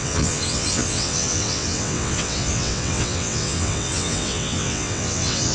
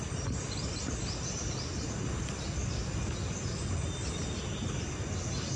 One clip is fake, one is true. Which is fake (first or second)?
first